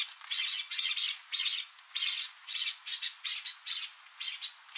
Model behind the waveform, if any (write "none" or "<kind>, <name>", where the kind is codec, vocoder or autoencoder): vocoder, Vocos